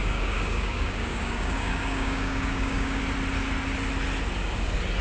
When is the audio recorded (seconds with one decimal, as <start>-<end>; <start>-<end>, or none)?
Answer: 3.0-5.0